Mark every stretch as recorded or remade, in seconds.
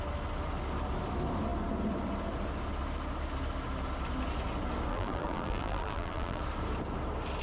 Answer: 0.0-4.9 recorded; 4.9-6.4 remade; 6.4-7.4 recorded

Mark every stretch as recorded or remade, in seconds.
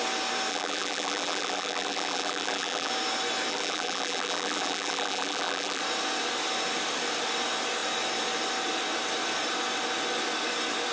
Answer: 0.0-0.5 recorded; 0.5-2.9 remade; 2.9-3.5 recorded; 3.5-5.8 remade; 5.8-10.9 recorded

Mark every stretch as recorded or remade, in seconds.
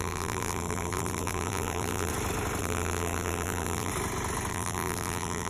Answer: 0.0-2.1 remade; 2.1-2.6 recorded; 2.6-3.9 remade; 3.9-4.5 recorded; 4.5-5.5 remade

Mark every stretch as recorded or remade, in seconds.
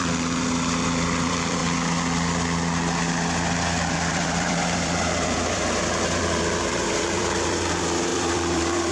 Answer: 0.0-1.6 remade; 1.6-3.9 recorded; 3.9-8.9 remade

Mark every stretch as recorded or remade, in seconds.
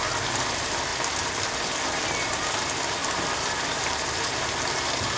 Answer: 0.0-0.9 recorded; 0.9-1.5 remade; 1.5-3.0 recorded; 3.0-4.8 remade; 4.8-5.2 recorded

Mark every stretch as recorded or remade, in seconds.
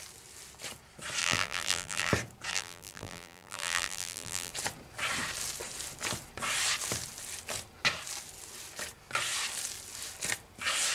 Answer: 0.0-1.2 recorded; 1.2-2.1 remade; 2.1-2.5 recorded; 2.5-4.5 remade; 4.5-10.9 recorded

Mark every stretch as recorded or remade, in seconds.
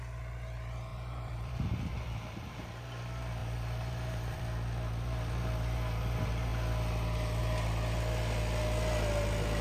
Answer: 0.0-0.9 recorded; 0.9-2.7 remade; 2.7-3.4 recorded; 3.4-4.4 remade; 4.4-9.6 recorded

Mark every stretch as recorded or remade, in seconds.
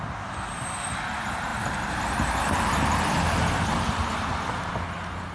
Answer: 0.0-1.5 recorded; 1.5-4.7 remade; 4.7-5.3 recorded